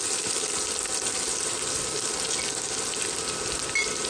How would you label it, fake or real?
real